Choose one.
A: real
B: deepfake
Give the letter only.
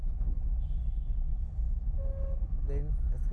A